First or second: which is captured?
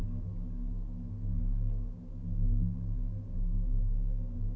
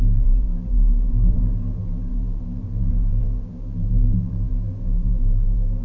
first